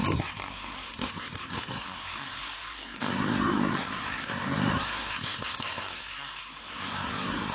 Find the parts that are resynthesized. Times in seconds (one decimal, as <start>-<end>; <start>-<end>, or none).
0.0-7.5

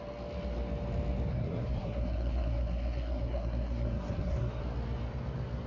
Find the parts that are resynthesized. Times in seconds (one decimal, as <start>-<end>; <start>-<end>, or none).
1.3-4.6